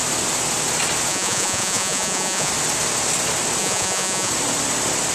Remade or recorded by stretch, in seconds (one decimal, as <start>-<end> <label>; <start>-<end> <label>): 0.0-1.1 recorded; 1.1-2.5 remade; 2.5-3.6 recorded; 3.6-4.3 remade; 4.3-5.1 recorded